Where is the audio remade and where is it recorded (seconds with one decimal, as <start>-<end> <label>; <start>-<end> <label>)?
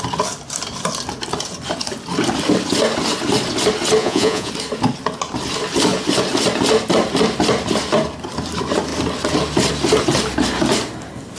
0.0-4.0 recorded; 4.0-4.5 remade; 4.5-11.4 recorded